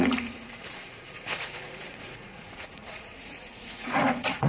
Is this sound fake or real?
fake